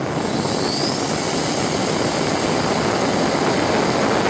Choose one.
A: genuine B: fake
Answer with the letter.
A